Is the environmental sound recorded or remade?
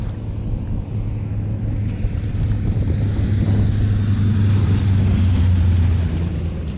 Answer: recorded